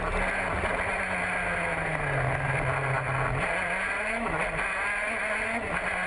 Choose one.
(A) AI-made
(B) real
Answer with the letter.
B